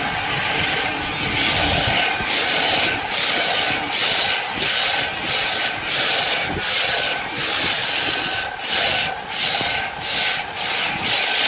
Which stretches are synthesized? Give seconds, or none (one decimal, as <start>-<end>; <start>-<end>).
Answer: none